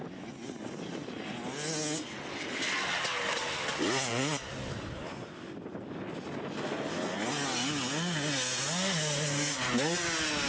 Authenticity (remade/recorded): recorded